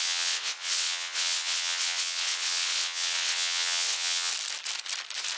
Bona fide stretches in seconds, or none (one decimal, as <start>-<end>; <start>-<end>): 4.3-5.4